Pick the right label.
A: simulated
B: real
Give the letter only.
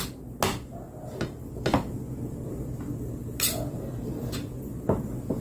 B